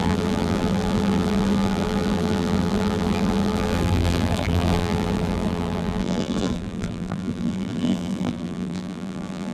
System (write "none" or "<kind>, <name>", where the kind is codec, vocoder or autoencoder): vocoder, BigVGAN v2